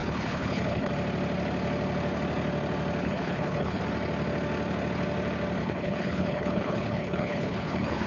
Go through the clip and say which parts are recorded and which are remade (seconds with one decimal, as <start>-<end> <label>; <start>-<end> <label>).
0.0-0.9 remade; 0.9-3.0 recorded; 3.0-3.8 remade; 3.8-5.6 recorded; 5.6-8.1 remade